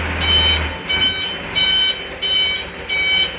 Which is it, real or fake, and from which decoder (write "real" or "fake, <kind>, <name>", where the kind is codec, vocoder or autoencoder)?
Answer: fake, vocoder, BigVGAN v2